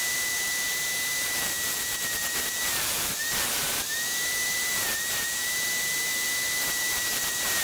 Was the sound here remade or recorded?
remade